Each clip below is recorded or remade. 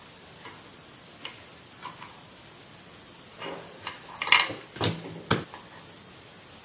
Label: recorded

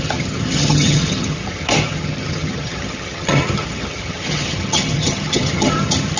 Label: remade